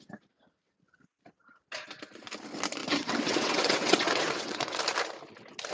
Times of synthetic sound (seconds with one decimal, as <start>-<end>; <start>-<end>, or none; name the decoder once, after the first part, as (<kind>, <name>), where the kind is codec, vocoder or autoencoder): 2.8-4.8 (vocoder, WaveNeXt)